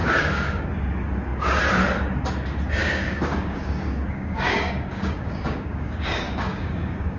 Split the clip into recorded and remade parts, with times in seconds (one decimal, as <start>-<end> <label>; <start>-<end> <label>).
0.0-0.7 remade; 0.7-2.8 recorded; 2.8-7.2 remade